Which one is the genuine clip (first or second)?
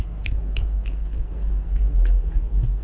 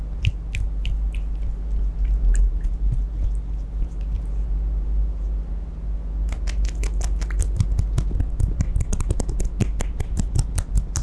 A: second